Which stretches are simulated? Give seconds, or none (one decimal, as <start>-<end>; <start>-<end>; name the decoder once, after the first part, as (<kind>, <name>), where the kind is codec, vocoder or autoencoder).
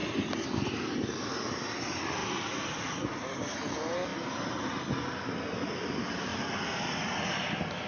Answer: 2.2-2.8 (vocoder, BigVGAN v2); 6.3-7.9